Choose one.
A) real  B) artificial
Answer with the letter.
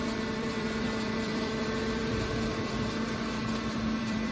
B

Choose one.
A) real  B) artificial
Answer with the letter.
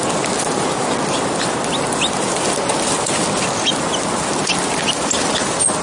A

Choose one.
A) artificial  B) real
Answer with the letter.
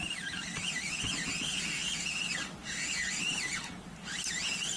B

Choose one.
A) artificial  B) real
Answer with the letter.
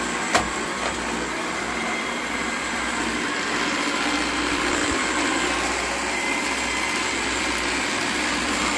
A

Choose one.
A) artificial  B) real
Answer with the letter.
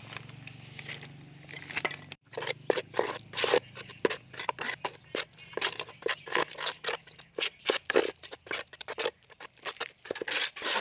B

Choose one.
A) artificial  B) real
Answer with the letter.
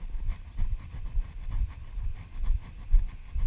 B